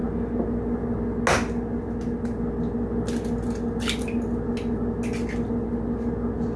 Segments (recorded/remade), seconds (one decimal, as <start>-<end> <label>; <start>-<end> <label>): 0.0-6.6 recorded